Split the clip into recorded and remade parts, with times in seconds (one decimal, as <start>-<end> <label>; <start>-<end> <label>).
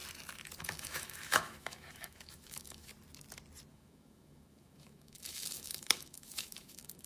0.0-0.6 recorded; 0.6-2.9 remade; 2.9-3.7 recorded; 3.7-7.1 remade